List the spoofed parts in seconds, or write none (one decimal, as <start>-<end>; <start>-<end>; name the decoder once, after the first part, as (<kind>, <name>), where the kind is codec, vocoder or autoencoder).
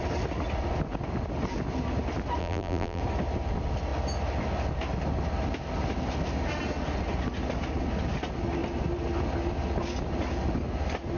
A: 2.4-3.0 (vocoder, BigVGAN v2)